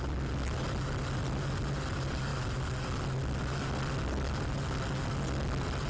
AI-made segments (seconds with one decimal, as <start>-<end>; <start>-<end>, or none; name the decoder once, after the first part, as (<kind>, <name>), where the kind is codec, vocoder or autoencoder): none